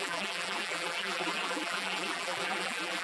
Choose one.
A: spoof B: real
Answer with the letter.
A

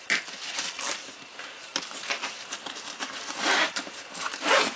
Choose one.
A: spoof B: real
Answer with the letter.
B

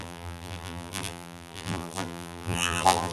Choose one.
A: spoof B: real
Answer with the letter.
A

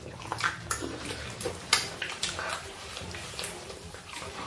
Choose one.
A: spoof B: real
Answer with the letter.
A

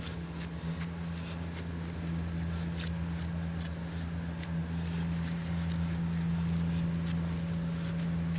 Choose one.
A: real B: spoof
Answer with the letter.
A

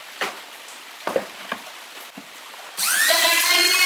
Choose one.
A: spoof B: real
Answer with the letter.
B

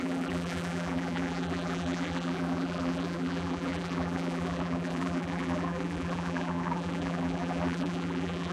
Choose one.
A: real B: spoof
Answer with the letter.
B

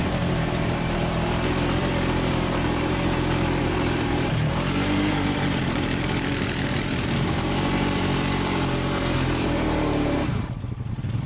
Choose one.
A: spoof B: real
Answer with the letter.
A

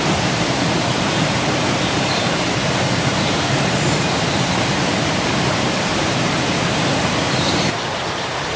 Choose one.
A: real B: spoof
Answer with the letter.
B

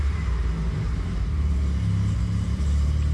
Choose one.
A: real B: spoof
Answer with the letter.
B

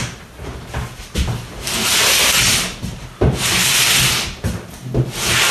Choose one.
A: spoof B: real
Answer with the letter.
B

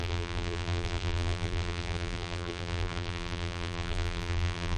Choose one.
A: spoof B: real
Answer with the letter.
A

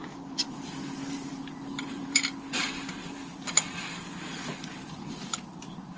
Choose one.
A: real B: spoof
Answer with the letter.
B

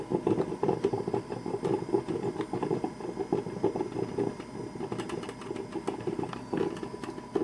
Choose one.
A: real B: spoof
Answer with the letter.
B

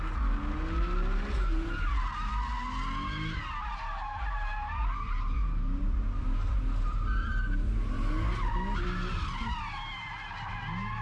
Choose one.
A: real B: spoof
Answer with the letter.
A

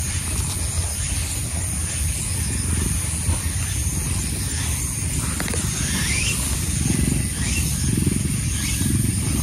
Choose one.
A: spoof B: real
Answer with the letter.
B